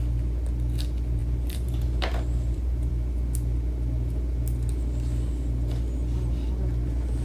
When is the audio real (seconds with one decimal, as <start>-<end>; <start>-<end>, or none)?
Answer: 0.0-1.2; 2.9-7.2